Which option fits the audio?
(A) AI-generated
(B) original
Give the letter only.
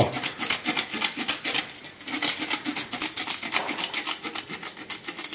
B